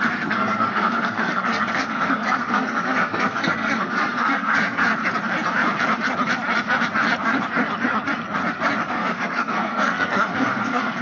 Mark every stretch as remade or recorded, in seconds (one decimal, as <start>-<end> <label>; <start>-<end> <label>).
0.0-4.9 remade; 4.9-8.8 recorded; 8.8-11.0 remade

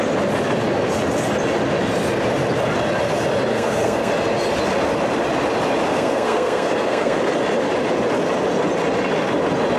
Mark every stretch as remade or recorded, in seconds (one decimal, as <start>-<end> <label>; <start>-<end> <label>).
0.0-3.5 recorded; 3.5-4.1 remade; 4.1-5.9 recorded; 5.9-7.2 remade; 7.2-9.8 recorded

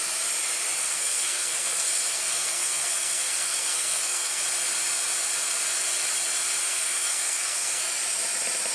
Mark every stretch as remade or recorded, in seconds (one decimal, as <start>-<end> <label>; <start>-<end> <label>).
0.0-0.8 recorded; 0.8-4.4 remade; 4.4-6.6 recorded; 6.6-7.8 remade; 7.8-8.7 recorded

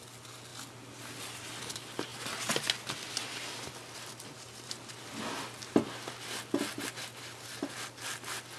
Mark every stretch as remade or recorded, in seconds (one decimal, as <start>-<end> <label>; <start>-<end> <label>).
0.0-8.6 recorded

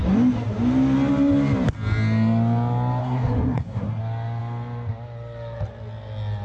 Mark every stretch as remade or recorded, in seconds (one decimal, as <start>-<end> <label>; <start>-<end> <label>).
0.0-3.0 recorded; 3.0-4.0 remade; 4.0-6.4 recorded